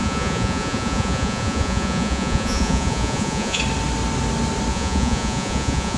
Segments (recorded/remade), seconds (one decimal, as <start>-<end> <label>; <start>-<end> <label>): 0.0-3.6 remade; 3.6-4.7 recorded; 4.7-6.0 remade